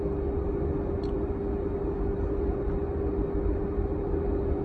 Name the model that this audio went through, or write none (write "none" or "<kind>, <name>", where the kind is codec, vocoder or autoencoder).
none